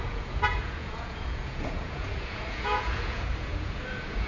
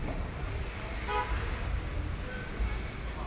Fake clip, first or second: first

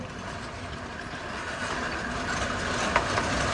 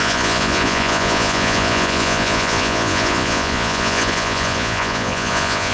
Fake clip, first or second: second